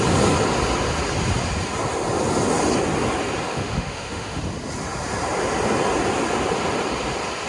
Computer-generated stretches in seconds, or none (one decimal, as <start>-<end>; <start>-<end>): 3.5-4.4